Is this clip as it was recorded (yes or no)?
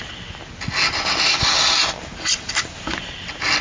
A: yes